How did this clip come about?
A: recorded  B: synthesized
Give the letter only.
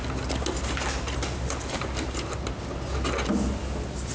A